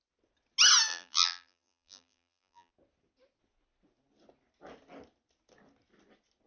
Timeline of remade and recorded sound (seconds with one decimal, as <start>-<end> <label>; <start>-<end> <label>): 0.0-0.9 recorded; 0.9-2.7 remade; 2.7-6.5 recorded